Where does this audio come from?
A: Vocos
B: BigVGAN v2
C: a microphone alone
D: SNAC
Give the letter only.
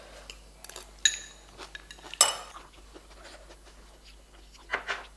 C